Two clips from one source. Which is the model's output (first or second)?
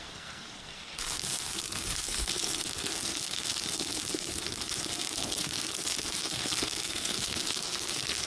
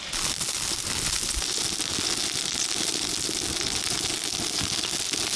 first